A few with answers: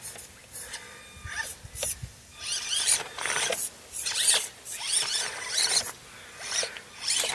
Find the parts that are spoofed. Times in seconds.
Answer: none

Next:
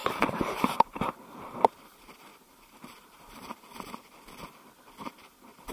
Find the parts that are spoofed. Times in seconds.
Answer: 0.0-1.2 (vocoder, BigVGAN v2); 2.3-3.6